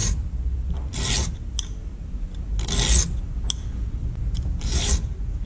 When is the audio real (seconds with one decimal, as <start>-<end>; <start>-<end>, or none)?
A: 0.0-5.5